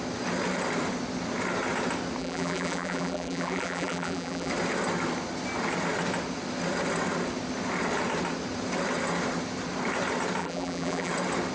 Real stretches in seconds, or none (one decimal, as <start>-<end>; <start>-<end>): 0.0-2.2; 4.5-10.4; 11.1-11.5